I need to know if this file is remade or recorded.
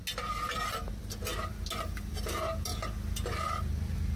recorded